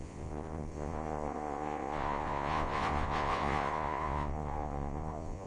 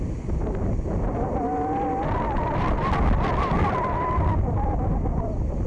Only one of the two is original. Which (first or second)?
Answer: second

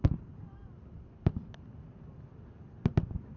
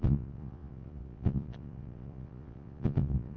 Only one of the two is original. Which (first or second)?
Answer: first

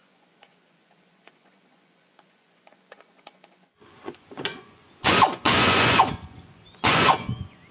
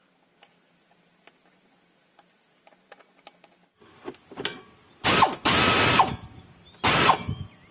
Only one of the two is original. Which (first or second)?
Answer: second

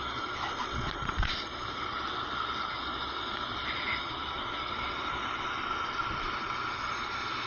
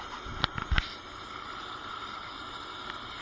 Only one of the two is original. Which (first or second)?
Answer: second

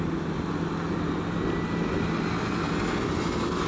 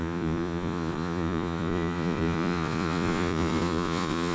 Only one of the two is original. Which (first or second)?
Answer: first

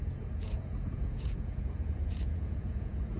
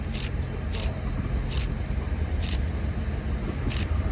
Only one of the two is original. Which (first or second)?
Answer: second